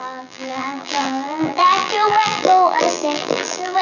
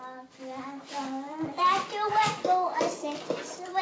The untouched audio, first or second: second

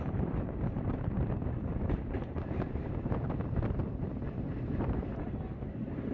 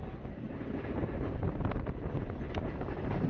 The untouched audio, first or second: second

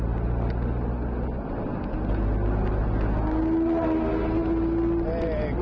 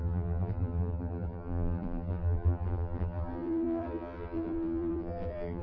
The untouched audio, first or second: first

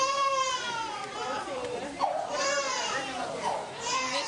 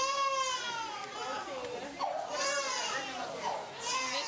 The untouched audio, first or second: second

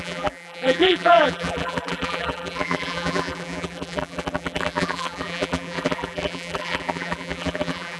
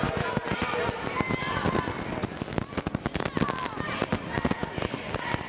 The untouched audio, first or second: second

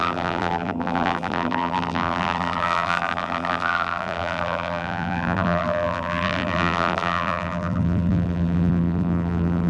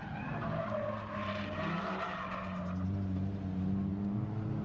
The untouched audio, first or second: second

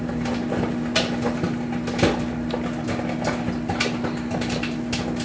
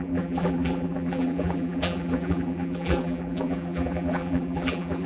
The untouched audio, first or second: first